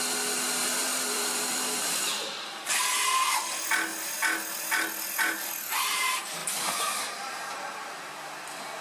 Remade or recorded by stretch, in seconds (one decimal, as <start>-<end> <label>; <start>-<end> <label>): 0.0-0.8 recorded; 0.8-2.8 remade; 2.8-6.4 recorded; 6.4-8.1 remade; 8.1-8.8 recorded